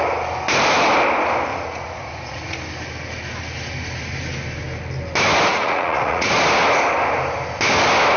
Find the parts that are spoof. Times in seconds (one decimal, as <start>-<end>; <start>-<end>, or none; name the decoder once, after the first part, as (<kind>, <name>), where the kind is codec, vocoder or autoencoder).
1.5-2.6 (vocoder, Vocos); 5.5-6.3